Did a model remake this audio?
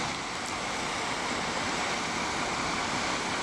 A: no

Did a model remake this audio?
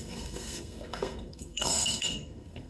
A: yes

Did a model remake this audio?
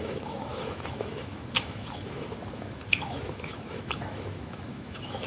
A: yes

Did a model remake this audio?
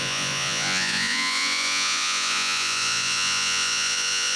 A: yes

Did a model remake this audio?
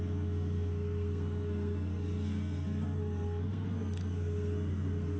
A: yes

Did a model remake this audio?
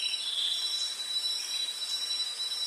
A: yes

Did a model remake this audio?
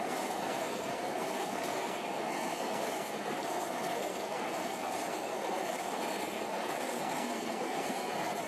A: yes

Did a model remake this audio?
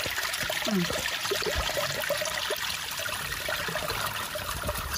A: no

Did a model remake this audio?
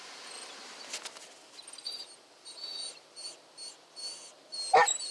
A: no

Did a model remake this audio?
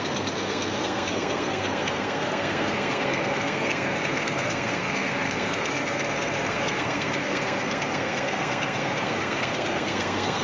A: yes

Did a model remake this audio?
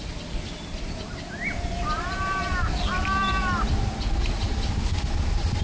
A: no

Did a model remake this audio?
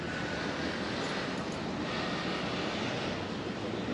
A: no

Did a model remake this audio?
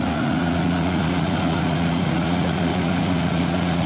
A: yes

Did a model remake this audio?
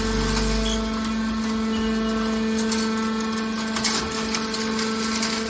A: no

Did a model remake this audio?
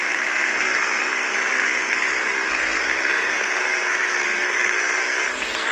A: yes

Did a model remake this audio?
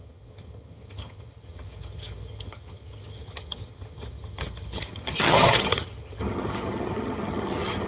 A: yes